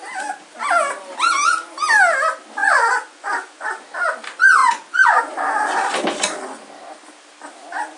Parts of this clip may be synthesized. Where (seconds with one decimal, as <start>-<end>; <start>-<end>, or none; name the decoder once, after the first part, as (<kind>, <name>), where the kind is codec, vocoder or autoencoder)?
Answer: 2.6-3.7 (vocoder, Vocos); 4.6-5.3